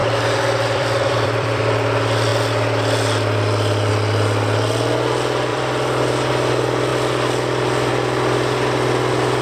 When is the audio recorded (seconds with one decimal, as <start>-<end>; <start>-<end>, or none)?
1.6-5.5; 6.3-9.4